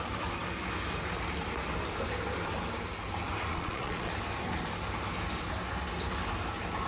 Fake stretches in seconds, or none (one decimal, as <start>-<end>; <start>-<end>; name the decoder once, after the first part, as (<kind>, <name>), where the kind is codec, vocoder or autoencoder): 3.5-4.1 (vocoder, Vocos)